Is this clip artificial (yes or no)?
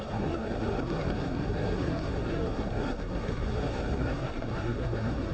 yes